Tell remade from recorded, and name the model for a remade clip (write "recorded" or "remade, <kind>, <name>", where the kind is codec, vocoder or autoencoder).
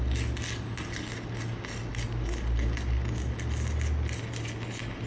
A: recorded